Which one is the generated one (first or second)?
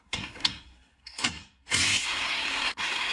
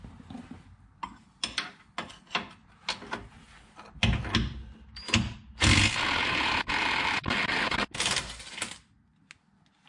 first